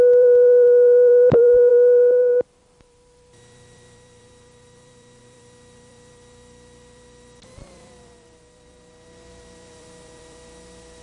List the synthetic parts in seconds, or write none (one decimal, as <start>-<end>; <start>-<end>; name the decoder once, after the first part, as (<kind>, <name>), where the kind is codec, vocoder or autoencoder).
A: 0.0-11.0 (vocoder, BigVGAN v2)